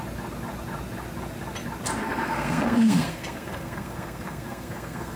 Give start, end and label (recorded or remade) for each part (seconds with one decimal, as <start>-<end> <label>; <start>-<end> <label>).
0.0-2.0 recorded; 2.0-5.2 remade